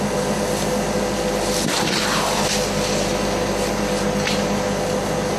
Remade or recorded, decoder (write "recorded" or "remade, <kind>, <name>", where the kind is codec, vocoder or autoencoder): recorded